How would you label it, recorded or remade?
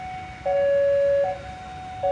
recorded